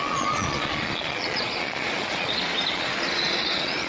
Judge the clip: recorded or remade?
remade